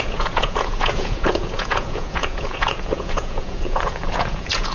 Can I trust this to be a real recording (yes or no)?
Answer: no